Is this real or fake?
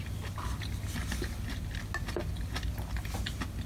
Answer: real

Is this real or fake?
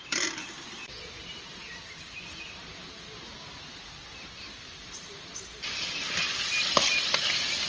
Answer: real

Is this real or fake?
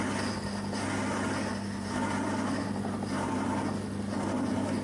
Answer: real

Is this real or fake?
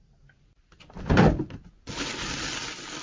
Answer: real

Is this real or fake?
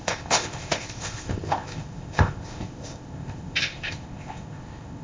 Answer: fake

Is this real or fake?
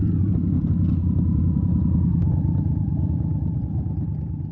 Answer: fake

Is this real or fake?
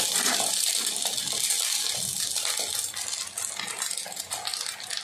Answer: real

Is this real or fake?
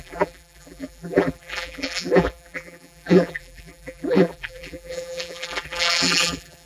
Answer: fake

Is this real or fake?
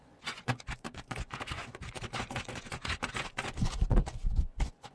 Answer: fake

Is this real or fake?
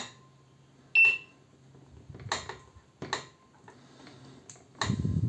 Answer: real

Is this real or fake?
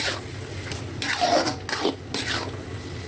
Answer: real